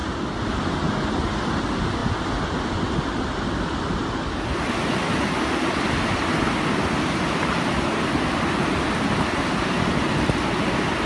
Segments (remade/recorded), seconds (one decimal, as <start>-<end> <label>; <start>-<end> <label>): 0.0-11.1 recorded